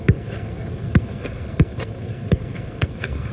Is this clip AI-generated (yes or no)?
yes